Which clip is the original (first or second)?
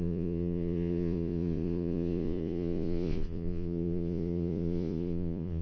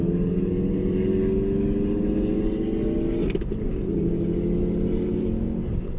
second